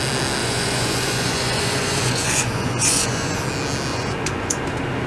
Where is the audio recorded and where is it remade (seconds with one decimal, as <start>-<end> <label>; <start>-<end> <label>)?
0.0-0.4 recorded; 0.4-3.4 remade; 3.4-3.9 recorded; 3.9-4.6 remade; 4.6-5.1 recorded